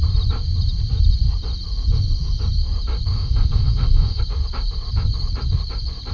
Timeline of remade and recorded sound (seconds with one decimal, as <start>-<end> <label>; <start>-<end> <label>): 0.0-3.1 recorded; 3.1-4.2 remade; 4.2-6.1 recorded